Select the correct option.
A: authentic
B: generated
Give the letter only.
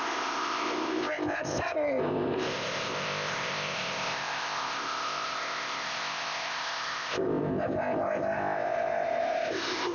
B